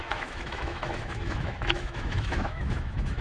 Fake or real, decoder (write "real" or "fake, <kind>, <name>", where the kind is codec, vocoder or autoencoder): fake, autoencoder, DAC-VAE